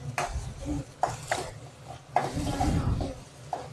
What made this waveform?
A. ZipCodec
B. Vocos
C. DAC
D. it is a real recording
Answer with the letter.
D